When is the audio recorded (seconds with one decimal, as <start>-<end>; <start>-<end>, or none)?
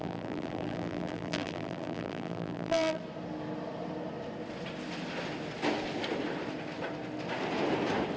3.0-8.2